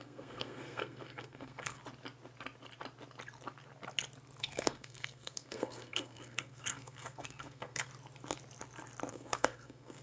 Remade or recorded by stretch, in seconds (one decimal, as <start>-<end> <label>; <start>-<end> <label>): 0.0-1.8 remade; 1.8-4.4 recorded; 4.4-7.9 remade; 7.9-9.1 recorded; 9.1-10.0 remade